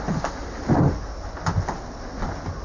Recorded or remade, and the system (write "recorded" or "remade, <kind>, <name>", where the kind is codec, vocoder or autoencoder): recorded